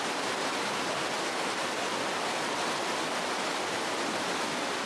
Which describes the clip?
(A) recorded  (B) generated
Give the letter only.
A